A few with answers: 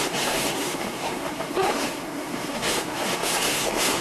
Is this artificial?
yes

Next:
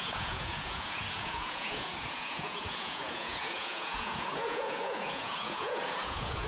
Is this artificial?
yes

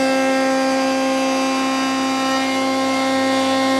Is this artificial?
no